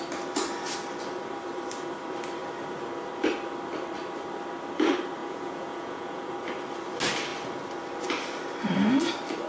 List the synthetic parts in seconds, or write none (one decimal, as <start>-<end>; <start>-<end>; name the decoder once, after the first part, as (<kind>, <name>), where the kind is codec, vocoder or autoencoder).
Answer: 5.2-6.3 (vocoder, Vocos)